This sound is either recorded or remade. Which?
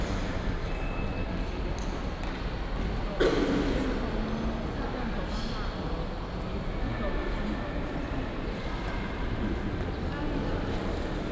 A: recorded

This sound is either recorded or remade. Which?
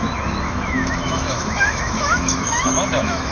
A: remade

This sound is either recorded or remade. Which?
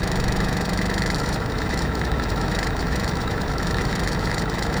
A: remade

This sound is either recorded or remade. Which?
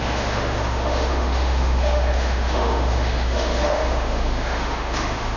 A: remade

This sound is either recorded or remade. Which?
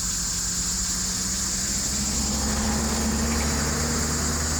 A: recorded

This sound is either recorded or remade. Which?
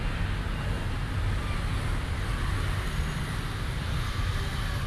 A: recorded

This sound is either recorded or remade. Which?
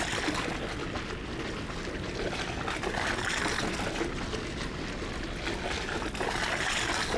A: recorded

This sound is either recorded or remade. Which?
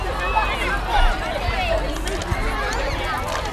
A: recorded